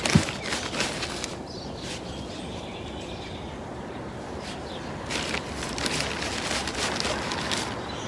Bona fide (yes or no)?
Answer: yes